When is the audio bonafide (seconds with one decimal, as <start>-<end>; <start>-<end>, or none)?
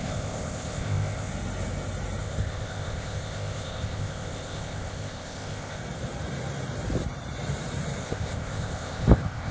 1.3-2.2; 5.8-8.0